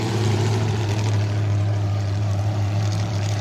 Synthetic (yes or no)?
yes